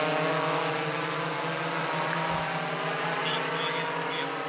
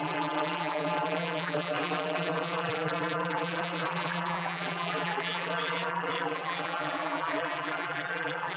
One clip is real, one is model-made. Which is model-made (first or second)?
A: second